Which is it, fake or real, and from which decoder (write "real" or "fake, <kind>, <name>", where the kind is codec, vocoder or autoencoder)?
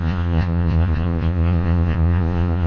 fake, vocoder, Vocos